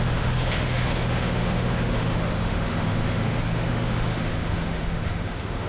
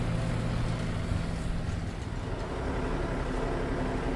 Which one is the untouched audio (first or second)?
second